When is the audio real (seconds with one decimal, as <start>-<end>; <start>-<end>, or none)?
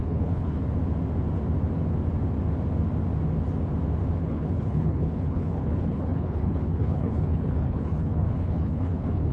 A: 0.6-4.2